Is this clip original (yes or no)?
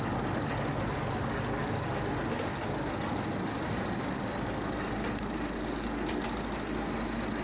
yes